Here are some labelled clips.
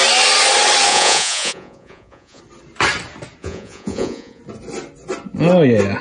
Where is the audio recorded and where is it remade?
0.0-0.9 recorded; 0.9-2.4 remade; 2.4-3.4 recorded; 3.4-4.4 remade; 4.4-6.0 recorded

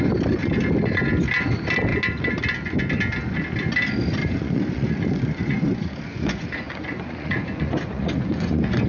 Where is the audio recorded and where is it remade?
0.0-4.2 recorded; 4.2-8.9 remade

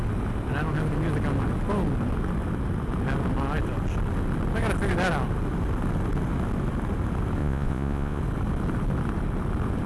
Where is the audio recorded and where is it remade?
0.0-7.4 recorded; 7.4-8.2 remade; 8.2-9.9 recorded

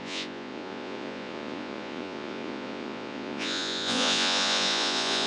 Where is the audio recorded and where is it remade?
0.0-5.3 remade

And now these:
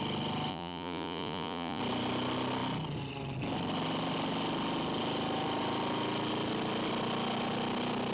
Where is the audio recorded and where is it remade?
0.0-0.5 recorded; 0.5-1.8 remade; 1.8-8.1 recorded